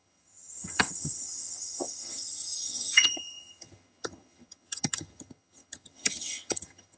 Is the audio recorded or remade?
remade